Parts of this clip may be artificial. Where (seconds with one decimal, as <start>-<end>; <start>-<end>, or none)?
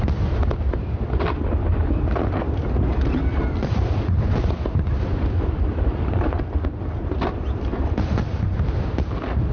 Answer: 0.0-9.5